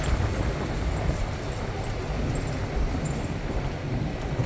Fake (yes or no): no